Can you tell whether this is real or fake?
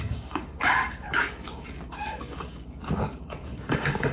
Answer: fake